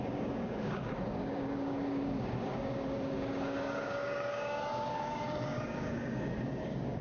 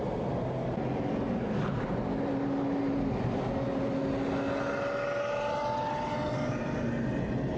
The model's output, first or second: first